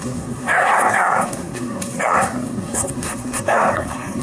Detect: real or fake fake